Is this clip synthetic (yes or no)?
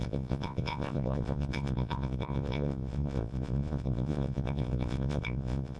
yes